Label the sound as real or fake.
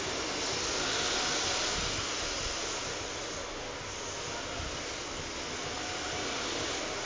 real